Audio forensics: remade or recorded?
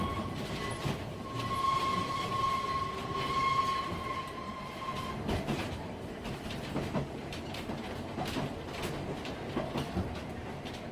recorded